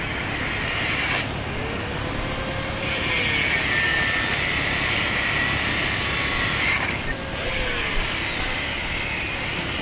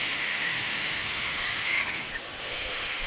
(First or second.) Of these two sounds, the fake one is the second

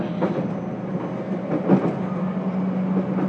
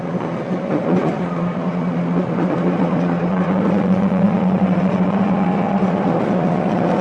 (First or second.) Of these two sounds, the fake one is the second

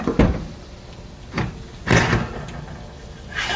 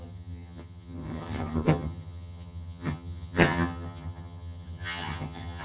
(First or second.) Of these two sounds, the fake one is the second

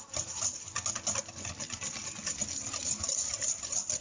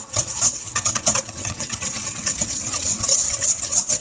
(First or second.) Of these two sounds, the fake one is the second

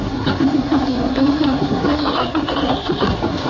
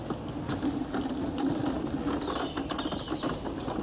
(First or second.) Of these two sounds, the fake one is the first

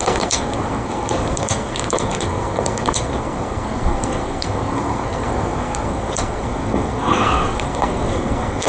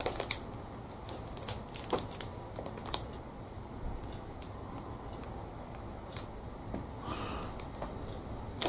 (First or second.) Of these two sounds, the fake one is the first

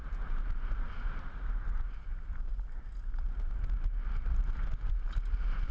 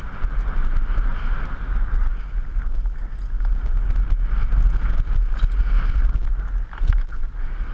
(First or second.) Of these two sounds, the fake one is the first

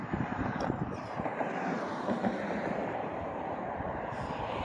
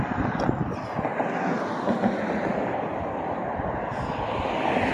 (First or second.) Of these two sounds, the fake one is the first